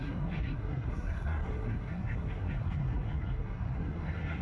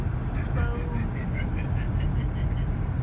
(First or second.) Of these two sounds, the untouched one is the second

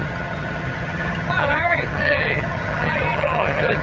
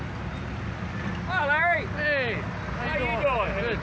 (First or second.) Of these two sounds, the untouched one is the second